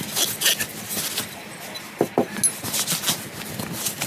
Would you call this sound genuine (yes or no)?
yes